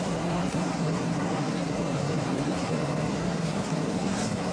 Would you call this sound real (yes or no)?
no